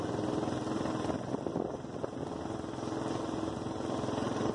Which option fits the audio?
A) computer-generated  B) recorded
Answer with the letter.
B